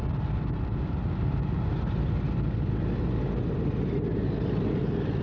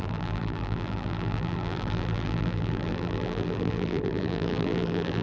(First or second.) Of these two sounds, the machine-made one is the second